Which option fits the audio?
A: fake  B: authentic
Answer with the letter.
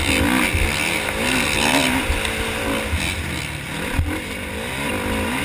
B